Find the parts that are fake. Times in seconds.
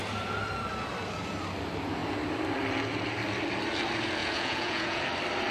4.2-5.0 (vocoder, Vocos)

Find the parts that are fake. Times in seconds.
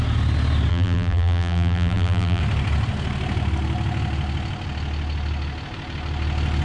0.7-2.4 (vocoder, BigVGAN v2)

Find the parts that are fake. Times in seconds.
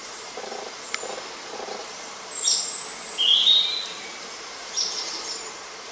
0.0-0.9 (vocoder, BigVGAN v2); 1.8-5.3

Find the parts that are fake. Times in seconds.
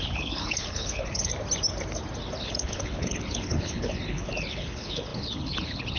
0.0-1.3 (codec, HILCodec); 2.4-6.0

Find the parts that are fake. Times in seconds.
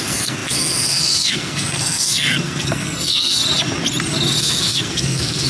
0.0-3.4 (codec, SNAC); 4.4-5.5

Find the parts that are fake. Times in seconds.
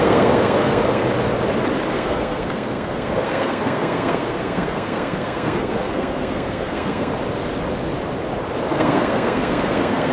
0.0-1.0 (codec, SNAC); 1.9-7.1; 8.7-10.1